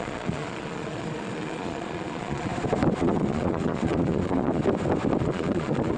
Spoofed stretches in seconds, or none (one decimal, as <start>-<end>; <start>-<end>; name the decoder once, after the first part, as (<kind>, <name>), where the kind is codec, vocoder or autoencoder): 0.0-2.5 (vocoder, Vocos); 3.0-4.6; 5.2-6.0